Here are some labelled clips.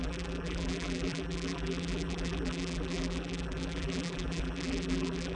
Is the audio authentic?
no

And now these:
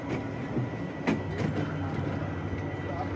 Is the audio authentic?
yes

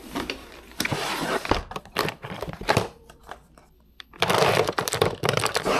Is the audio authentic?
no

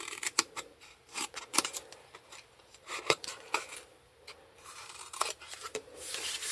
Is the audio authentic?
no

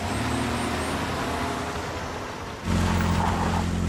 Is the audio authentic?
yes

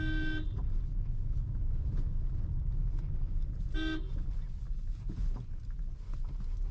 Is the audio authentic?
yes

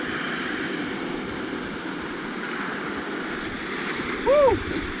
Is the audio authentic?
no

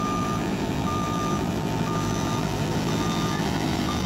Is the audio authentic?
no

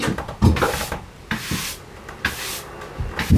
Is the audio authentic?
yes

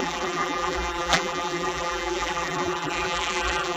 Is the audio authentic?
no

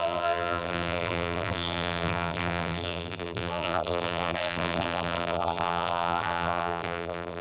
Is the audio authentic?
no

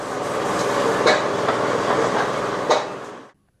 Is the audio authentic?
yes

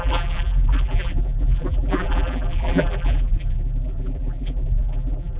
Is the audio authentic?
no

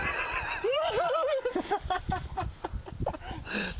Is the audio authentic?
yes